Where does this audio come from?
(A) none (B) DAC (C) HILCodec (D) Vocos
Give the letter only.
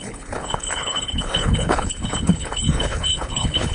C